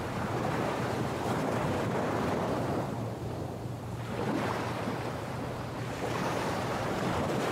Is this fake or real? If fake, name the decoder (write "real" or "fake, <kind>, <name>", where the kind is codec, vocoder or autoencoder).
fake, vocoder, BigVGAN v2